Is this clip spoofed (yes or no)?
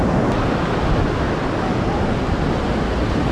no